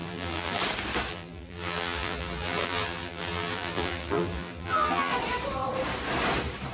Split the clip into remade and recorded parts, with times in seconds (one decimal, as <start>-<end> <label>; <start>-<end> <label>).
0.0-0.6 remade; 0.6-1.1 recorded; 1.1-5.1 remade; 5.1-6.7 recorded